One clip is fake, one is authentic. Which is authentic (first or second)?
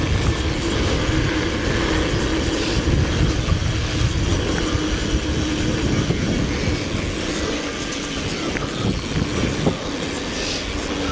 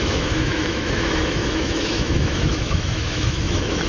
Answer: first